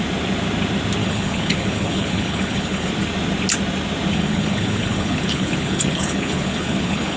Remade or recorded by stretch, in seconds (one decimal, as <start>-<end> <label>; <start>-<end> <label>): 0.0-1.0 recorded; 1.0-2.9 remade; 2.9-4.1 recorded; 4.1-7.2 remade